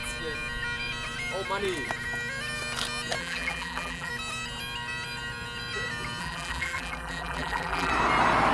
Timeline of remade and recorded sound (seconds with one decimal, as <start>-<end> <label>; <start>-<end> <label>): 0.0-3.2 recorded; 3.2-4.1 remade; 4.1-6.2 recorded; 6.2-7.9 remade; 7.9-8.5 recorded